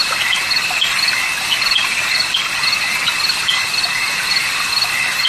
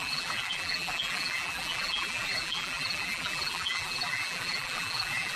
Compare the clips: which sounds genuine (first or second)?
first